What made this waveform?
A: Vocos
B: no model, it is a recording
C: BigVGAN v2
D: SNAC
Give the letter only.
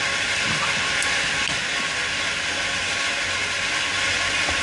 B